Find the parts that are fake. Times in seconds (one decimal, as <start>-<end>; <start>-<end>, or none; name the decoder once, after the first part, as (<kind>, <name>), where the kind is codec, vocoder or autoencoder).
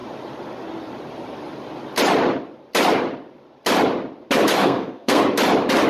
4.6-5.2 (codec, SNAC)